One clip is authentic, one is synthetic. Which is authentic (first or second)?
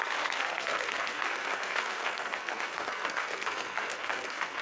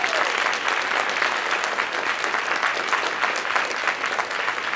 second